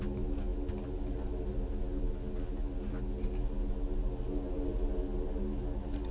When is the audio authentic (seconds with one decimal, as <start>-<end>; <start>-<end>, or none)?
0.0-6.1